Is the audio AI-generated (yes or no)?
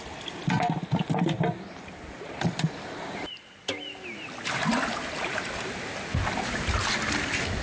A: no